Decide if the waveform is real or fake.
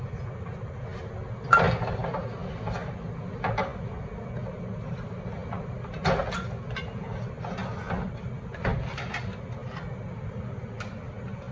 real